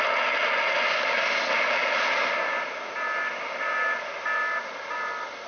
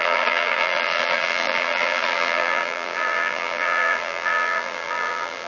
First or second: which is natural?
first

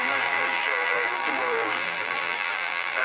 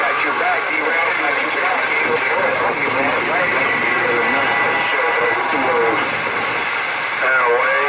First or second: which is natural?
second